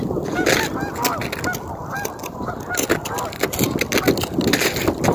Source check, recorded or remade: recorded